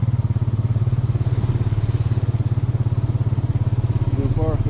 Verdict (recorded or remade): recorded